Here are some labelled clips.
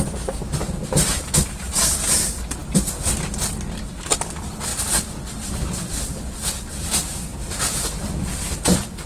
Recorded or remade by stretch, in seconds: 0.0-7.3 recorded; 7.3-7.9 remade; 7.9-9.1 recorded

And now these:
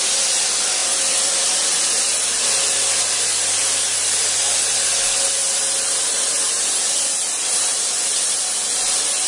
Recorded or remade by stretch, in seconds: 0.0-0.8 recorded; 0.8-2.0 remade; 2.0-9.3 recorded